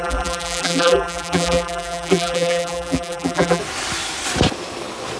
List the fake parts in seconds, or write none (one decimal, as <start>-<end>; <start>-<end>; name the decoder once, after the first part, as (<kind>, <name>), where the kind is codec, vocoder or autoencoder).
0.0-3.6 (vocoder, BigVGAN v2)